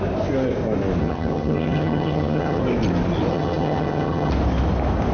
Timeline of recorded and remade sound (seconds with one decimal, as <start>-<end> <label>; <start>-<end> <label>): 0.0-1.0 recorded; 1.0-2.6 remade; 2.6-3.3 recorded; 3.3-4.3 remade; 4.3-5.1 recorded